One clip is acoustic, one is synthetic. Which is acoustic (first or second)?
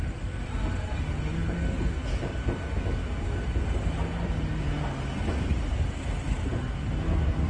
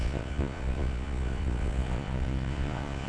first